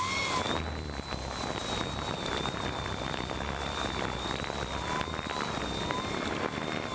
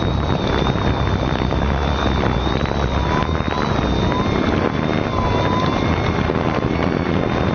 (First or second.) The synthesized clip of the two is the first